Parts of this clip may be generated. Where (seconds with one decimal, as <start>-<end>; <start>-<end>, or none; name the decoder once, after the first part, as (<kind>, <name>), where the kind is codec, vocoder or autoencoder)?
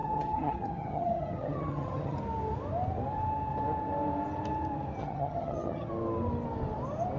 0.0-2.2 (vocoder, HiFi-GAN); 5.0-5.9